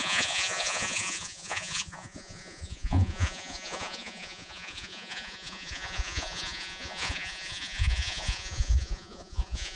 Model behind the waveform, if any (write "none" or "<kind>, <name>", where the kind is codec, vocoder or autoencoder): vocoder, Vocos